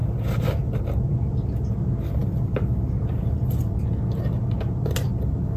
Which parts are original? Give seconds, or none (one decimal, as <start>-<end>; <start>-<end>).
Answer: 0.0-2.2; 3.7-5.6